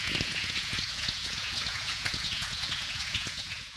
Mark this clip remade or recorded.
remade